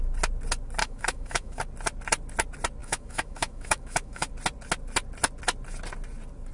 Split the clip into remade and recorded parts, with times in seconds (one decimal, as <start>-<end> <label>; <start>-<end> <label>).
0.0-0.8 recorded; 0.8-1.6 remade; 1.6-2.8 recorded; 2.8-4.3 remade; 4.3-6.5 recorded